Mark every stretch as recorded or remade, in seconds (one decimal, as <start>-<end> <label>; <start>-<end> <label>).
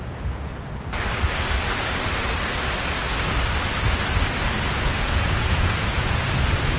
0.0-0.5 remade; 0.5-4.6 recorded; 4.6-6.8 remade